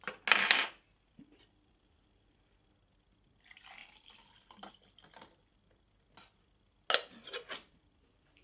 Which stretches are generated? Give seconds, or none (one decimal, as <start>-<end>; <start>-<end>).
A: 3.8-4.7